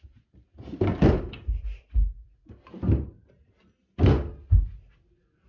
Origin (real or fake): real